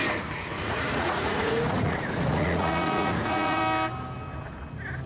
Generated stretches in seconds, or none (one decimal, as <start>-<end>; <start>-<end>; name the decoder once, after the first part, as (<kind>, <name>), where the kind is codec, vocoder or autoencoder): 0.5-3.6 (vocoder, Vocos)